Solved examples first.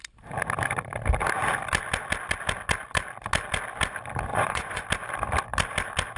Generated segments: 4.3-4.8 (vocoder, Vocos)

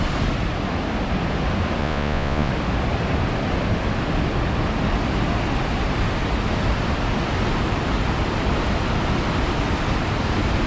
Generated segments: 1.8-2.5 (vocoder, Vocos)

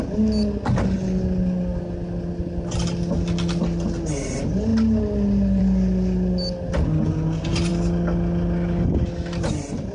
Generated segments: none